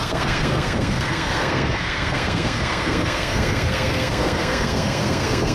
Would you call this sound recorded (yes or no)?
no